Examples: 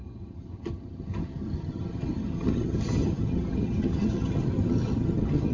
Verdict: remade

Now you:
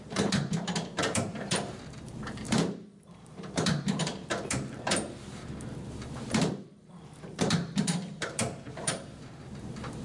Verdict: remade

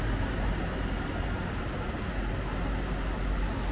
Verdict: recorded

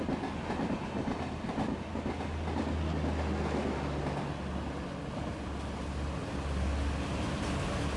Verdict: recorded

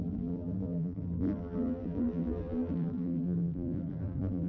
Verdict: remade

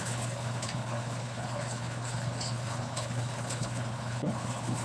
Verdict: remade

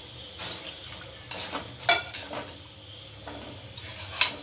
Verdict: recorded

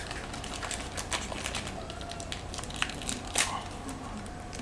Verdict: recorded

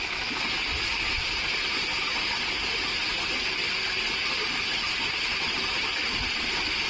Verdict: recorded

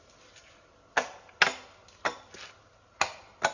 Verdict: recorded